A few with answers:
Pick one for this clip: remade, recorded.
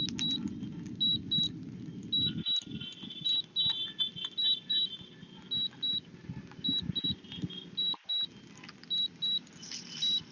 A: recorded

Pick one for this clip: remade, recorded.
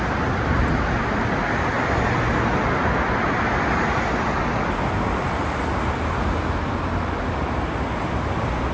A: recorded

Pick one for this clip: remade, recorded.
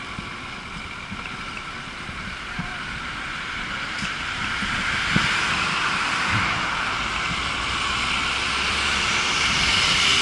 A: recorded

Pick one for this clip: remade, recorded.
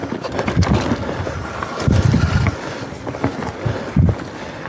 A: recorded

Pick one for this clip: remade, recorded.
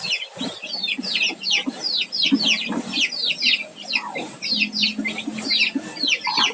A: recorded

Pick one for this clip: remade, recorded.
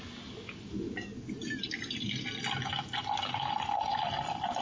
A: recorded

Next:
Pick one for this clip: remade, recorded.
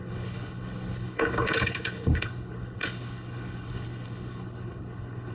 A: remade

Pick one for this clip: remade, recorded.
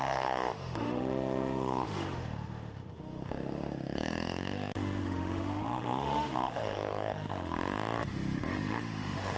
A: remade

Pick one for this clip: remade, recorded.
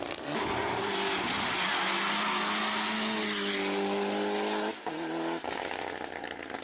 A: recorded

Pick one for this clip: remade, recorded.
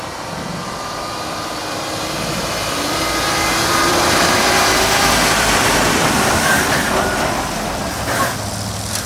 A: remade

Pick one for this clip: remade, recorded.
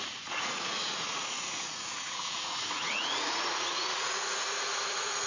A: remade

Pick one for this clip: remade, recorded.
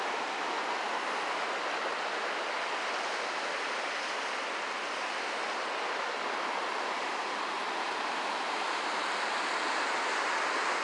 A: recorded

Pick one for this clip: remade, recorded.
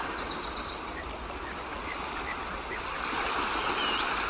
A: recorded